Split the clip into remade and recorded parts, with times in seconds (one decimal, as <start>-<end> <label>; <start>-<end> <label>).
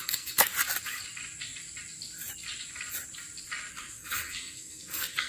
0.0-0.5 remade; 0.5-3.7 recorded; 3.7-5.3 remade